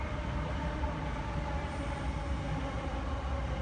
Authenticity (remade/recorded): recorded